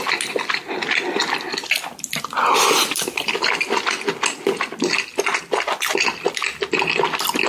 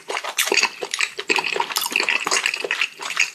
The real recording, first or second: first